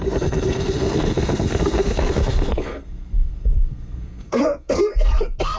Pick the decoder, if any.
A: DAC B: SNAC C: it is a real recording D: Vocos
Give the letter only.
B